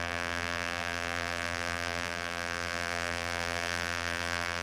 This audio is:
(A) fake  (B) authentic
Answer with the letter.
A